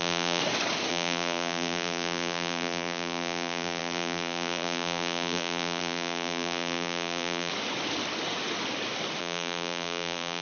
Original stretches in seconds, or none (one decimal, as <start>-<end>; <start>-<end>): 0.4-0.9; 7.5-9.2